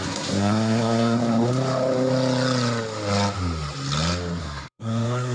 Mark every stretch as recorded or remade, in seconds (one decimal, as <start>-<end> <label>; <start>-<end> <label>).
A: 0.0-1.2 remade; 1.2-4.4 recorded; 4.4-5.3 remade